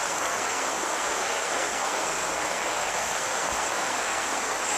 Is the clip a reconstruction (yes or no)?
yes